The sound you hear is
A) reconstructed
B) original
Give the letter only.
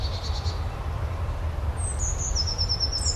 B